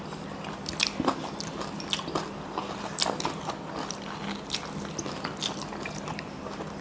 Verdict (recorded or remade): recorded